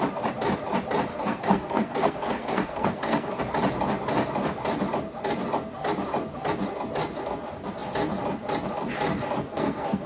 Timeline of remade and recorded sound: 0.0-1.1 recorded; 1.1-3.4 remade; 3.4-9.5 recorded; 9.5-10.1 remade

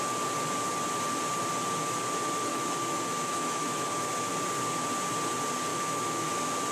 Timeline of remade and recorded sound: 0.0-2.5 recorded; 2.5-4.3 remade; 4.3-5.7 recorded; 5.7-6.3 remade; 6.3-6.7 recorded

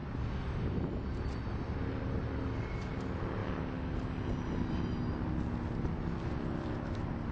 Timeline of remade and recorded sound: 0.0-7.3 recorded

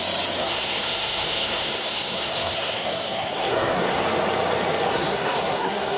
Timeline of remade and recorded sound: 0.0-0.4 recorded; 0.4-4.0 remade; 4.0-4.9 recorded; 4.9-6.0 remade

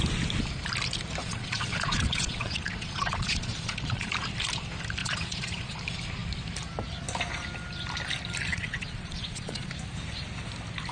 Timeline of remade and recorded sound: 0.0-1.2 recorded; 1.2-4.1 remade; 4.1-5.0 recorded; 5.0-5.8 remade; 5.8-8.5 recorded; 8.5-9.7 remade; 9.7-10.9 recorded

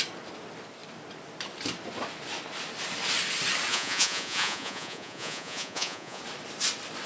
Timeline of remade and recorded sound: 0.0-3.7 recorded; 3.7-6.2 remade; 6.2-7.1 recorded